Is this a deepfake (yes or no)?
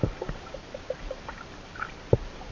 no